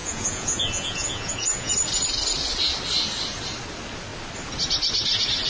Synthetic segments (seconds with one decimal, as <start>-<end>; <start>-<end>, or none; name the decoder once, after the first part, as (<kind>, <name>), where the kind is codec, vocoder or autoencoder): 0.0-1.7 (vocoder, Vocos)